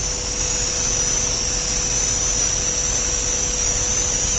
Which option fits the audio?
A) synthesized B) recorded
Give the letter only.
B